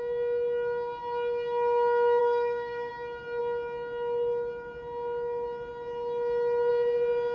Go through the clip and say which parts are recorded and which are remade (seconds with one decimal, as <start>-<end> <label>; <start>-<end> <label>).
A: 0.0-2.2 recorded; 2.2-2.9 remade; 2.9-7.3 recorded